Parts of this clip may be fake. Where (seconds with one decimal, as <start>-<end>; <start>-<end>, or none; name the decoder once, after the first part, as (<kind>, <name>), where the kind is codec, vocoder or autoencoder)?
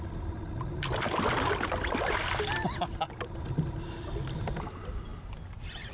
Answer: none